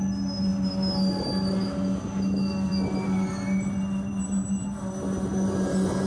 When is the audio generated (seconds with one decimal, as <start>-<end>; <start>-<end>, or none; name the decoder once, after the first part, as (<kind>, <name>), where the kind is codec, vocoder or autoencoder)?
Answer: none